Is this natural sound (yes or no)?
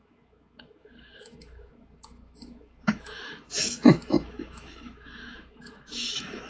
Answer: no